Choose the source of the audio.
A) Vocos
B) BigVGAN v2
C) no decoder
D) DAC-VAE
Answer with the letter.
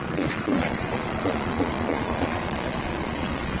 A